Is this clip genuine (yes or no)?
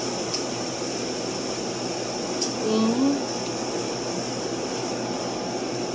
yes